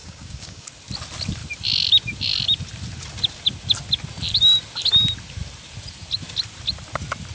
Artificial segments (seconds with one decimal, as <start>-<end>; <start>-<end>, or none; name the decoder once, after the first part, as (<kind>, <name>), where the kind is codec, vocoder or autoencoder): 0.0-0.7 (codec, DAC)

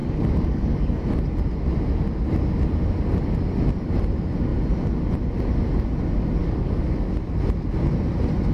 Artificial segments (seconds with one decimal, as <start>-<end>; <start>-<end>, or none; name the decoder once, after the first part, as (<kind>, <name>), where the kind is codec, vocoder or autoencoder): 0.0-1.0 (codec, DAC); 6.4-7.1

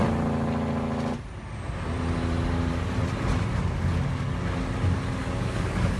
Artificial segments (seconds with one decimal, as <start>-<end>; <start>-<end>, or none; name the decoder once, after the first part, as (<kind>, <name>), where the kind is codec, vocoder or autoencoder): 5.2-6.0 (codec, DAC)

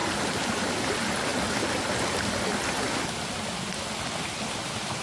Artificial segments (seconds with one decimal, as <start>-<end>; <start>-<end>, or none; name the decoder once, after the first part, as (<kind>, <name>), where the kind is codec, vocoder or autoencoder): none

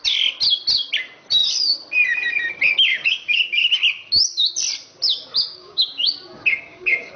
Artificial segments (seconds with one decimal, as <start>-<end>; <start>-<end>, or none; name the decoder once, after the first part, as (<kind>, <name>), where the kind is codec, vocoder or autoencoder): 2.9-3.7 (codec, DAC); 5.5-6.1; 6.7-7.2